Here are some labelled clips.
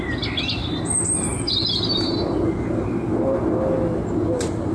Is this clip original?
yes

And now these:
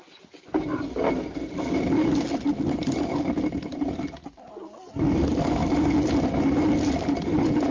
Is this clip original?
yes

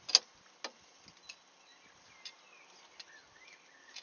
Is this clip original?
yes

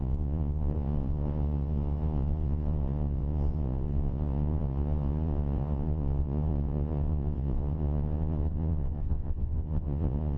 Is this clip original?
no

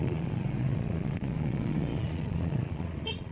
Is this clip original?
no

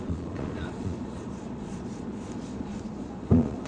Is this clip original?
no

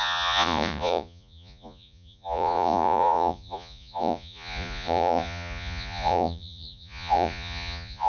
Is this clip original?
no